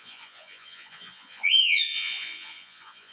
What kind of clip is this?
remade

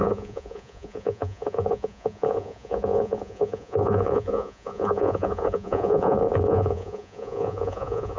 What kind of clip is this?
remade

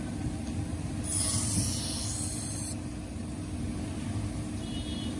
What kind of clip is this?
recorded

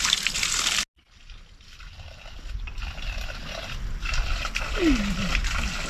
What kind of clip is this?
recorded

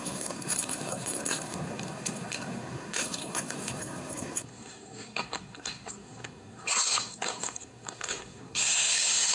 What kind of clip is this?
remade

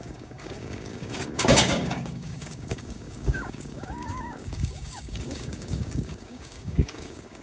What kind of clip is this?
remade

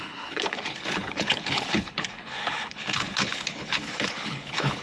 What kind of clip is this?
remade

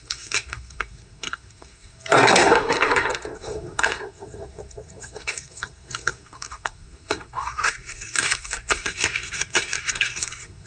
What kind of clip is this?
remade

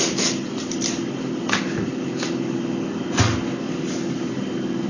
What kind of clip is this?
recorded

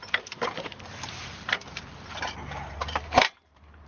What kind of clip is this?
remade